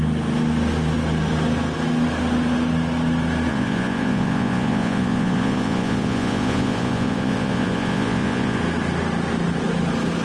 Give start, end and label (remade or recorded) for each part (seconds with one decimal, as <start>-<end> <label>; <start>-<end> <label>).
0.0-3.5 recorded; 3.5-8.6 remade; 8.6-10.2 recorded